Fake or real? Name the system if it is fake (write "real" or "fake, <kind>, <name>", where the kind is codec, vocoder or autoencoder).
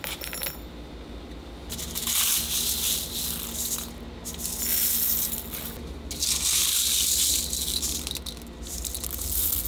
real